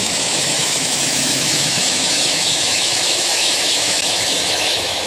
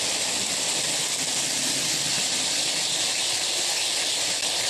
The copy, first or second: first